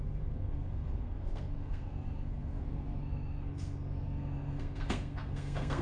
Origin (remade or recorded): remade